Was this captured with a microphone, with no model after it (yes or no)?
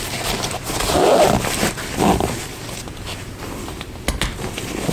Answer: no